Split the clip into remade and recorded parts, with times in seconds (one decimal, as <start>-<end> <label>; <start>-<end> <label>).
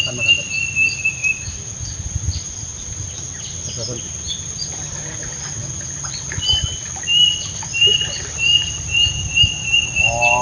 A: 0.0-7.8 recorded; 7.8-10.0 remade; 10.0-10.4 recorded